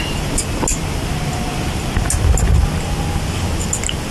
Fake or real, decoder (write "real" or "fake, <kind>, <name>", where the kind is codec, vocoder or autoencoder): real